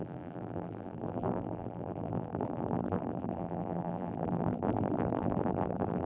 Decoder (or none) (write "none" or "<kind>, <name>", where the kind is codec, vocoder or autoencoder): vocoder, BigVGAN v2